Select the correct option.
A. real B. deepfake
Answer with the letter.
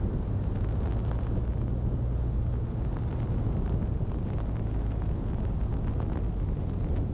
A